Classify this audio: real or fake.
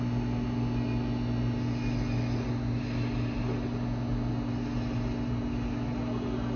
real